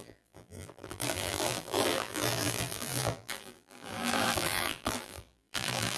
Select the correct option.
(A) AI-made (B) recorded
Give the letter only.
A